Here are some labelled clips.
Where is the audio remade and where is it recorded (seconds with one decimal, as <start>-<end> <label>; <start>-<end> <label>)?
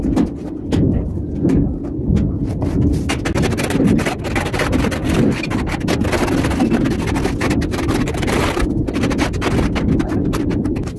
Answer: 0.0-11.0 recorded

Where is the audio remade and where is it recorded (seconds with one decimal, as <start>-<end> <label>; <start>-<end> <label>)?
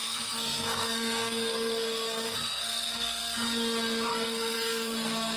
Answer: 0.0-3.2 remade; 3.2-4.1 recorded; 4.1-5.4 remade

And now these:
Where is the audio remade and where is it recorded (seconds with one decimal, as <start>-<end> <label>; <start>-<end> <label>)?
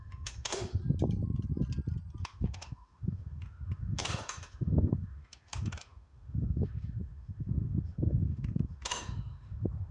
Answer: 0.0-0.8 remade; 0.8-2.2 recorded; 2.2-9.9 remade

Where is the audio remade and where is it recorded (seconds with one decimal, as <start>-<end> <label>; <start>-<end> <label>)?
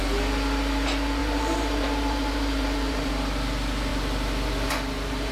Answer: 0.0-1.2 recorded; 1.2-3.1 remade; 3.1-3.9 recorded; 3.9-5.3 remade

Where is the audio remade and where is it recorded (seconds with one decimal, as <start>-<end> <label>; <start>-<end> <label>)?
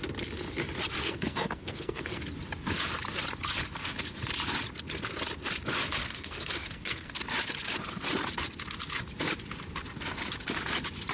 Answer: 0.0-1.0 recorded; 1.0-2.2 remade; 2.2-6.0 recorded; 6.0-7.2 remade; 7.2-11.1 recorded